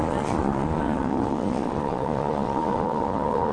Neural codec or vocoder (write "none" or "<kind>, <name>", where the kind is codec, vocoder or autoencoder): vocoder, Vocos